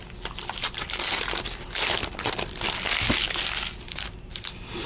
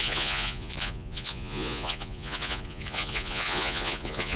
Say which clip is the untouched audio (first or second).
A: first